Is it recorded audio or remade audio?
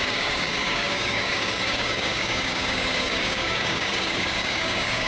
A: remade